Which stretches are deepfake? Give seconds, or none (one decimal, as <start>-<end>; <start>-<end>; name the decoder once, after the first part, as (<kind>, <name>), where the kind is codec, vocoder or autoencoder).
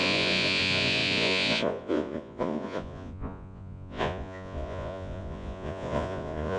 0.0-6.6 (vocoder, Vocos)